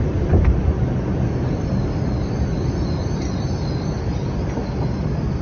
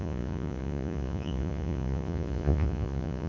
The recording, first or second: first